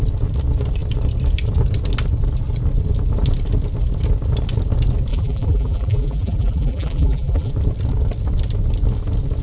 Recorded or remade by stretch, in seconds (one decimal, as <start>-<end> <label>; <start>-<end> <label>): 0.0-5.1 recorded; 5.1-7.5 remade; 7.5-9.4 recorded